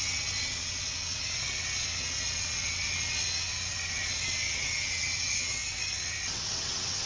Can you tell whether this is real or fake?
fake